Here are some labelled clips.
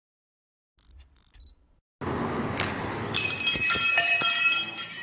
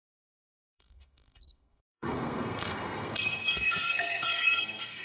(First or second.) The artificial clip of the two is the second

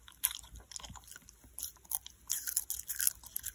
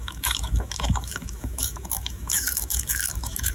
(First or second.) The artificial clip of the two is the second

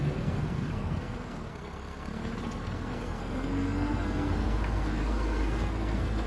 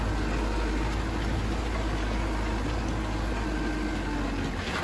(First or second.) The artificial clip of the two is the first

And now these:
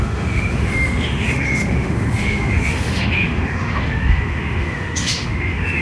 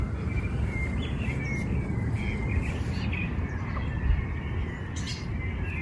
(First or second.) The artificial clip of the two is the first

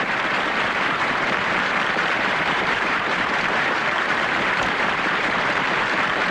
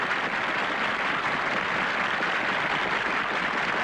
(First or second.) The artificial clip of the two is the first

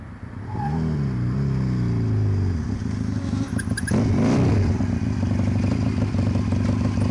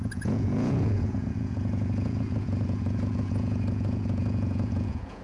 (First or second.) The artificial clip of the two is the second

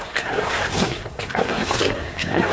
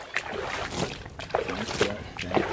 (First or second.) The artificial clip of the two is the first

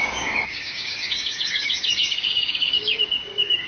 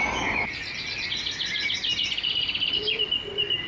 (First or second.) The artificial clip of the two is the first